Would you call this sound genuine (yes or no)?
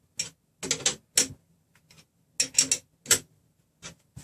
yes